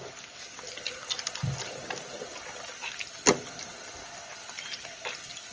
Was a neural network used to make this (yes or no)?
no